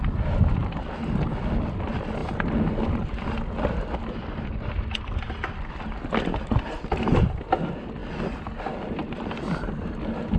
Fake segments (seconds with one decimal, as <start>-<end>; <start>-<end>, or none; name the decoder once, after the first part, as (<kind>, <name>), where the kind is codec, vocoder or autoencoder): none